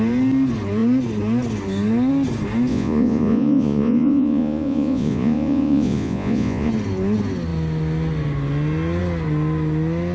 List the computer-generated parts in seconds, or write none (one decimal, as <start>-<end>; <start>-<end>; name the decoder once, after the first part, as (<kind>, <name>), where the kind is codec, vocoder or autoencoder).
2.7-6.7 (vocoder, Vocos)